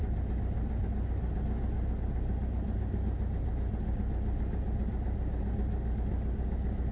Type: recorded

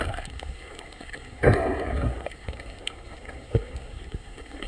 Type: remade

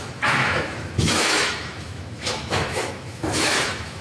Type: remade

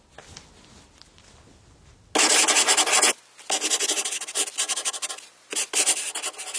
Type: recorded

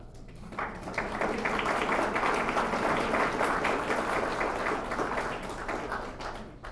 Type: recorded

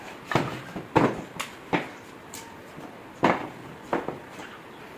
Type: recorded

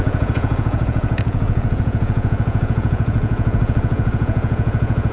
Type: remade